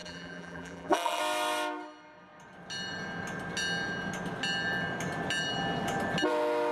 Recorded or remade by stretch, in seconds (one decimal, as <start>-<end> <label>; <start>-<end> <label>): 0.0-1.2 remade; 1.2-6.7 recorded